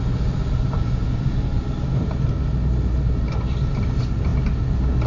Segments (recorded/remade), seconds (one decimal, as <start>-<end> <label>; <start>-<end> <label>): 0.0-5.1 recorded

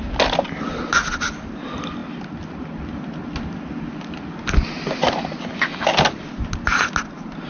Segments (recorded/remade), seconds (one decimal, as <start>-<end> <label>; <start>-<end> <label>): 0.0-7.5 recorded